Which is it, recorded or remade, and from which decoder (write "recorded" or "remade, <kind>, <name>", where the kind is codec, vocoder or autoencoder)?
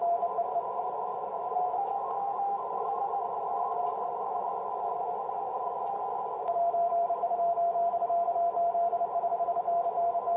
recorded